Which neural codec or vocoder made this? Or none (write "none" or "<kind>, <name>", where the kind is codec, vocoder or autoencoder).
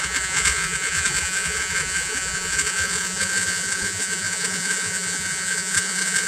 vocoder, Vocos